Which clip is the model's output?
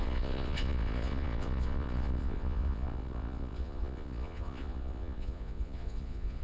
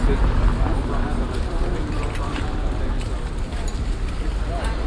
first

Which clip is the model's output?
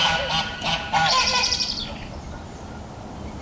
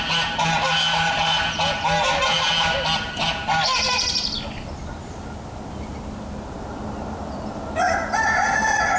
first